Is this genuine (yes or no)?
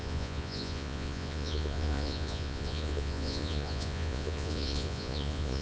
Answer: no